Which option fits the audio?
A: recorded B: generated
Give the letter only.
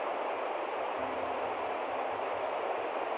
A